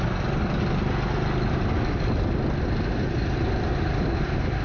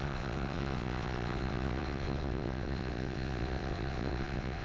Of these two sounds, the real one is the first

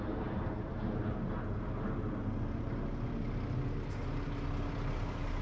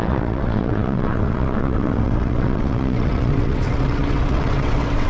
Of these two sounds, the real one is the first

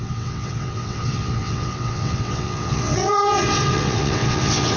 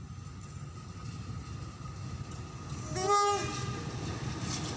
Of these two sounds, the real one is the second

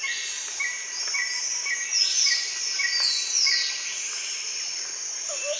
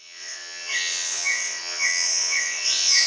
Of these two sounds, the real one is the first